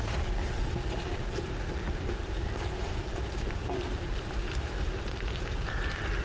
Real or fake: fake